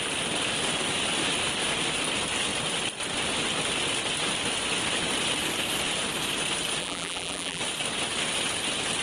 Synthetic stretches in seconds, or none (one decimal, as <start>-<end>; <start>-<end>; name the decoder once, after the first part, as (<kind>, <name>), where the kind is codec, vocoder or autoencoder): 6.8-7.6 (vocoder, BigVGAN v2)